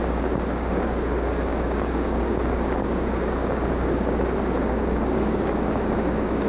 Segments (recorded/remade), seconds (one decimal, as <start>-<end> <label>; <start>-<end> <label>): 0.0-6.5 remade